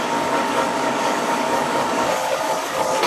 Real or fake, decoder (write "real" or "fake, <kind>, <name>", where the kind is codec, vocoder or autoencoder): fake, codec, DAC